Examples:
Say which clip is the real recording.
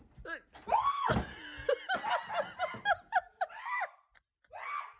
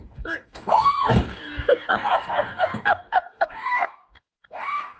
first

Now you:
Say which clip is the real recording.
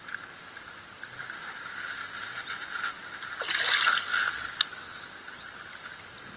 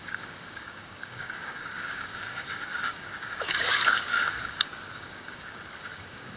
first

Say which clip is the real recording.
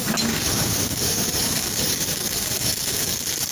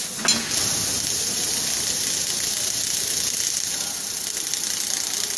second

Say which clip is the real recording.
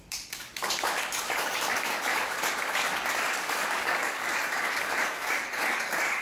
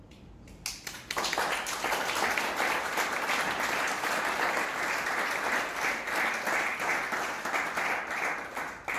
second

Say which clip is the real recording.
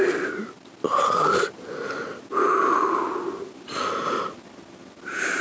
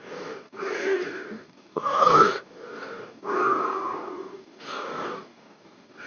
first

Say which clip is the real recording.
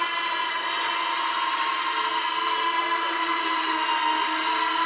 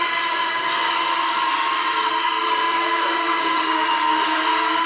first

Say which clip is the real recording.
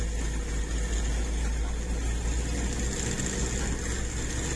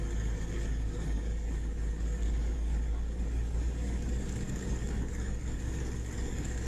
first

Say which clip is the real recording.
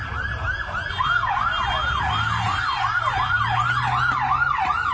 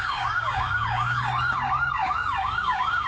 first